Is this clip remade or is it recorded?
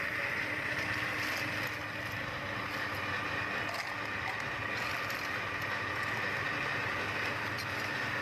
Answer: recorded